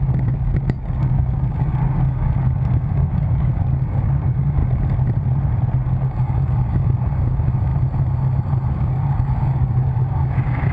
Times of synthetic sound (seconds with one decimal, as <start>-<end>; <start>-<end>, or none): 0.0-4.6; 5.9-7.7; 8.7-10.7